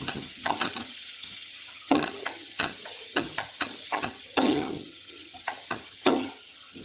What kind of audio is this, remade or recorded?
remade